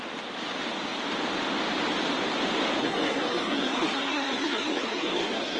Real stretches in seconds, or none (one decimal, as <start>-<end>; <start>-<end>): 0.0-2.8